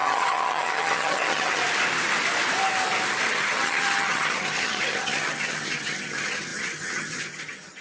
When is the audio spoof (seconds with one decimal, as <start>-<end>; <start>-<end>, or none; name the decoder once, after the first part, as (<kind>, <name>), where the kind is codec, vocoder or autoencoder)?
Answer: 0.0-1.6 (vocoder, HiFi-GAN); 3.3-7.8